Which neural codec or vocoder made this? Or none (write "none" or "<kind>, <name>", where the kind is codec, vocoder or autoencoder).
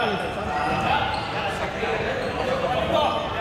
vocoder, BigVGAN v2